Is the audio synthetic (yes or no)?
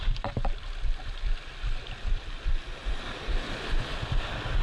no